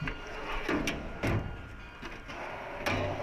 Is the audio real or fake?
real